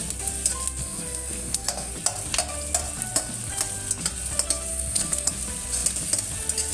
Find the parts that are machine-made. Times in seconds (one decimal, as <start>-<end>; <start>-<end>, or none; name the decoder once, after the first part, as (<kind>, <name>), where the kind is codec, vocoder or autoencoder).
0.8-1.9 (codec, SNAC); 4.7-5.3